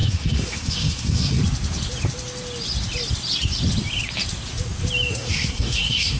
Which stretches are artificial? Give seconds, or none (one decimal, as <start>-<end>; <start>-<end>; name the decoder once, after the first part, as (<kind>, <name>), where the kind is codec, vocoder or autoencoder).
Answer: 0.0-1.4 (codec, SNAC); 5.1-6.2